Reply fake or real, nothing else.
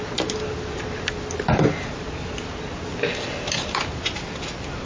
real